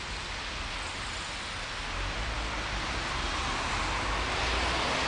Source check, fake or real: real